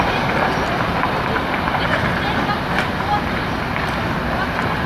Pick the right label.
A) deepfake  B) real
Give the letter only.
B